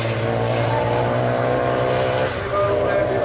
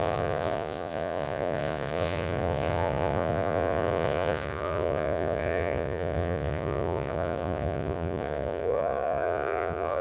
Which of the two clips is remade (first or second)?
second